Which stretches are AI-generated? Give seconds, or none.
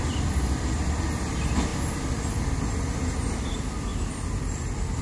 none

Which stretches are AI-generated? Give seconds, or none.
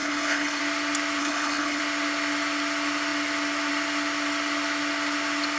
0.0-0.6 (codec, HILCodec); 1.2-1.8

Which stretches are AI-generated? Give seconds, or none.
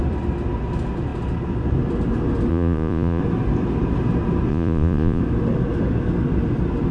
2.5-3.2 (vocoder, Vocos); 4.5-5.2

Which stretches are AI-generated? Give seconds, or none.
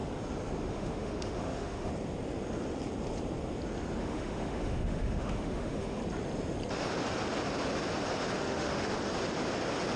0.7-1.9 (autoencoder, DAC-VAE); 4.0-6.0; 8.4-8.9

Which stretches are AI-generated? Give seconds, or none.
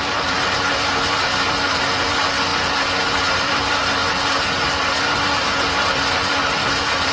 0.0-2.5 (vocoder, BigVGAN v2); 3.2-7.1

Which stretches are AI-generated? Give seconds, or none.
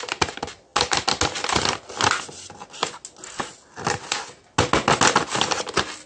none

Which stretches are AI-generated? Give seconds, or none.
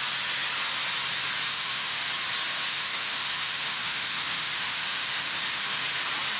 1.5-2.0 (autoencoder, DAC-VAE); 2.7-5.8